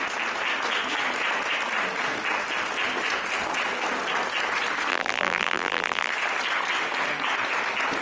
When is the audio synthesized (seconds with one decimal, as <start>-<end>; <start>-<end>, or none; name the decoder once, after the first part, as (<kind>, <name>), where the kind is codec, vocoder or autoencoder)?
4.9-6.1 (vocoder, BigVGAN v2)